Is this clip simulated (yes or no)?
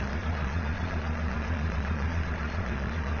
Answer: yes